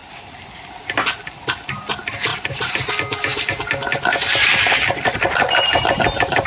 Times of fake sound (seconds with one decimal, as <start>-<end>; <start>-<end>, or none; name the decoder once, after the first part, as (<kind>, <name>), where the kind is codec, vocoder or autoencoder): 2.3-2.9 (vocoder, BigVGAN v2); 3.3-5.9